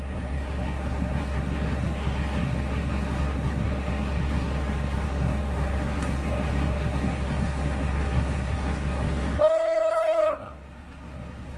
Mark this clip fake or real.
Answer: fake